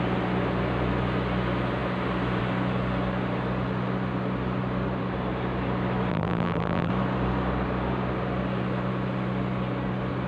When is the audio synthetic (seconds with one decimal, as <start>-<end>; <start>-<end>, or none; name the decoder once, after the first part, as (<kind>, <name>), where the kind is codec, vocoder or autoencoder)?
6.1-6.9 (vocoder, BigVGAN v2)